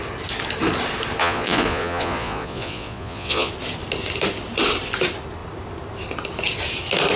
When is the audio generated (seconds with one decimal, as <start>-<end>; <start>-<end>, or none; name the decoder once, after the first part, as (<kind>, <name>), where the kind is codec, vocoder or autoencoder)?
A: 1.2-3.5 (vocoder, Vocos)